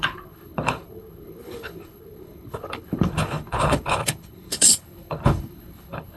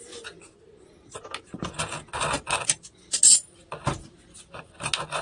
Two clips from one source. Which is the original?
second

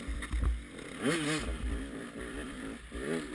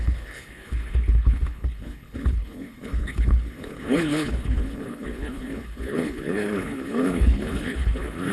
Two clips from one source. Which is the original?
first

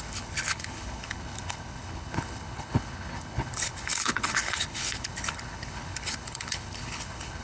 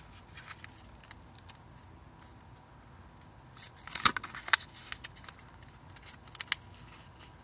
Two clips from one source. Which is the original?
second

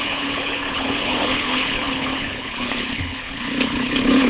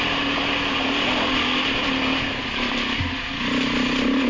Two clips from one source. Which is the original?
second